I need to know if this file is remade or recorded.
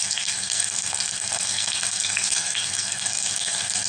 remade